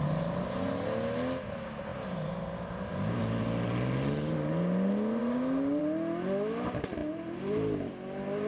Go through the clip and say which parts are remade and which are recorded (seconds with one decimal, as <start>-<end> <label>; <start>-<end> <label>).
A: 0.0-5.2 recorded; 5.2-5.8 remade; 5.8-8.5 recorded